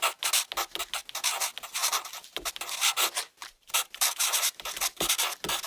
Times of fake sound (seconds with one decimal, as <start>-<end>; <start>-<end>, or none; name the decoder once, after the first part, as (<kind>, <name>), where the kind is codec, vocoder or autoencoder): 1.8-2.5 (vocoder, BigVGAN v2); 3.4-5.1